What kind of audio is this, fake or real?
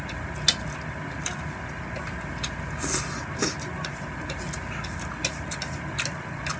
real